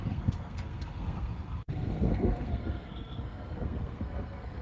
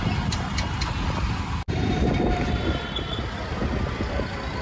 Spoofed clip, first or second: first